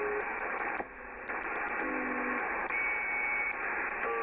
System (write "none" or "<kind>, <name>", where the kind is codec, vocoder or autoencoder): none